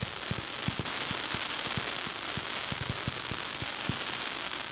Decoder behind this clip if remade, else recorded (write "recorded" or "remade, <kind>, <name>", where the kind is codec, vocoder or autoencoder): recorded